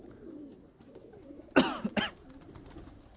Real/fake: real